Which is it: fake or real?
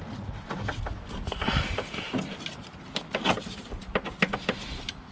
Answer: real